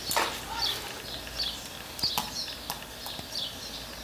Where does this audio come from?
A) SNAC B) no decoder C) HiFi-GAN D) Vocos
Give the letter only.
B